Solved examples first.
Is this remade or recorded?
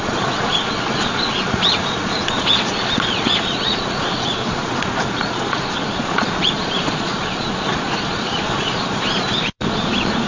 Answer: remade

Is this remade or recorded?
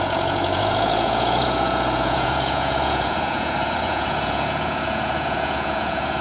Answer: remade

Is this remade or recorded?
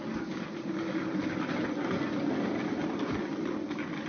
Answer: recorded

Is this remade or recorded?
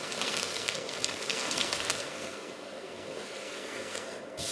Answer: remade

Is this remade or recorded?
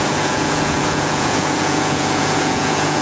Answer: remade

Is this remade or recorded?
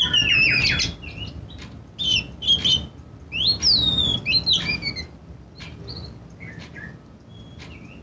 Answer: recorded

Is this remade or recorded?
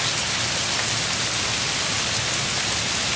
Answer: recorded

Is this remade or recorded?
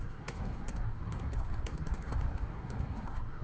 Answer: remade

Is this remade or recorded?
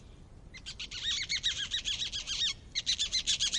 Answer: remade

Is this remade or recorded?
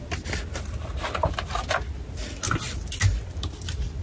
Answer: recorded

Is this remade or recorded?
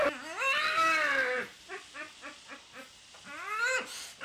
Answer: recorded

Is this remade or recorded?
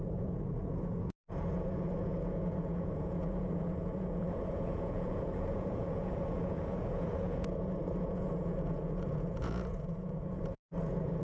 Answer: remade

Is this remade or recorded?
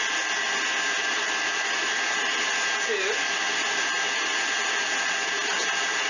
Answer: recorded